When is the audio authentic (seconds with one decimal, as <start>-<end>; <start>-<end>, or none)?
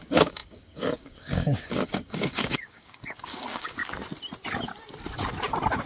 3.8-5.9